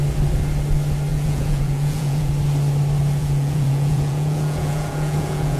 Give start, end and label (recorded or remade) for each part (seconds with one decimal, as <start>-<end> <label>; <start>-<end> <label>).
0.0-1.1 recorded; 1.1-2.3 remade; 2.3-3.2 recorded; 3.2-5.6 remade